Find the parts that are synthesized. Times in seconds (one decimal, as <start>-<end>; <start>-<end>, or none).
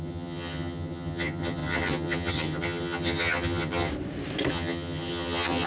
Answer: 0.0-3.9; 4.5-5.7